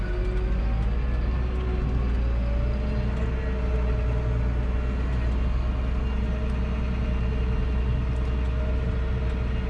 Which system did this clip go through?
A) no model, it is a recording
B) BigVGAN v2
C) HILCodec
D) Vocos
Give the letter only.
A